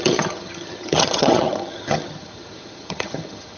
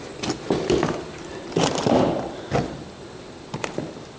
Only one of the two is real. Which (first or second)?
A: second